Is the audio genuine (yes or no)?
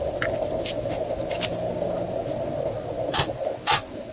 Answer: yes